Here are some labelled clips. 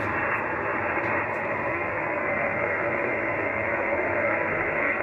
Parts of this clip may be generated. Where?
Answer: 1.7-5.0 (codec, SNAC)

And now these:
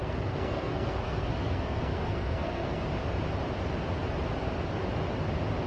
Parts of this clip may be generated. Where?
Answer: 0.0-2.8 (codec, SNAC)

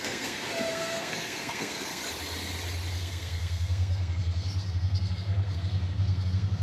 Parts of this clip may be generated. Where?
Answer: 0.0-2.0 (codec, SNAC); 2.9-6.6

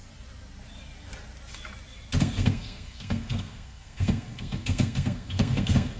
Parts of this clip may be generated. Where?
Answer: 2.2-6.0 (codec, SNAC)

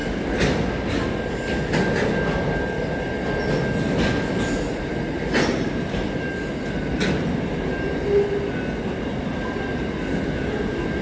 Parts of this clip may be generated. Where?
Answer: none

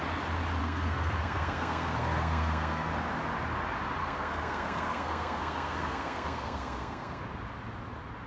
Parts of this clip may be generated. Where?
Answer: 0.6-2.9 (codec, SNAC); 4.0-7.2

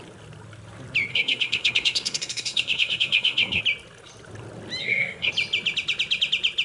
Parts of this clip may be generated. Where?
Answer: 1.1-3.6 (codec, SNAC); 4.8-5.3